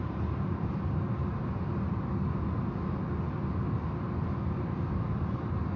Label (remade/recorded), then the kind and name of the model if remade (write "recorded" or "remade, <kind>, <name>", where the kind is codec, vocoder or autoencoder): recorded